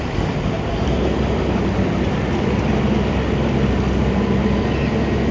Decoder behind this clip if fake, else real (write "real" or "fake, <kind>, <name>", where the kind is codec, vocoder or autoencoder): real